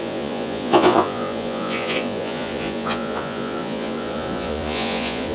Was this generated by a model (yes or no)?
yes